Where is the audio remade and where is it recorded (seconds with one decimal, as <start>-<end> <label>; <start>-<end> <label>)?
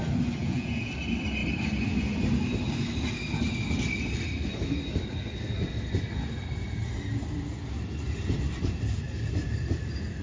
0.0-0.4 recorded; 0.4-0.9 remade; 0.9-10.2 recorded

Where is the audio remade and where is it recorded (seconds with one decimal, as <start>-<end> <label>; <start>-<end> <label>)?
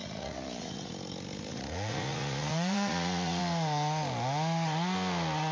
0.0-0.9 remade; 0.9-1.5 recorded; 1.5-3.4 remade; 3.4-5.5 recorded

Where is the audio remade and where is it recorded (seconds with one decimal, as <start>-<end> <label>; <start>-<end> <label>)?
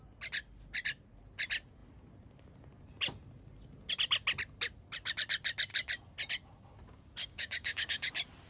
0.0-7.2 recorded; 7.2-8.1 remade; 8.1-8.5 recorded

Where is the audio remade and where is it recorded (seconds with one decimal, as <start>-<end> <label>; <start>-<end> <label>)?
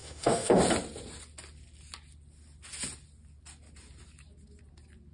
0.0-0.6 remade; 0.6-5.1 recorded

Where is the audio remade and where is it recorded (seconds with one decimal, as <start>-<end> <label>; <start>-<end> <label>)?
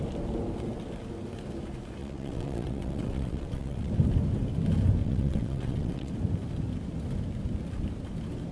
0.0-2.0 recorded; 2.0-3.9 remade; 3.9-5.0 recorded; 5.0-6.1 remade; 6.1-8.5 recorded